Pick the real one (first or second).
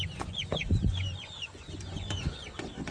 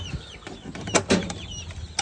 second